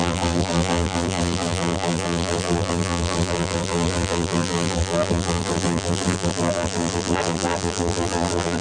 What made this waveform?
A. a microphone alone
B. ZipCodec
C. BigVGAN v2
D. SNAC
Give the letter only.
C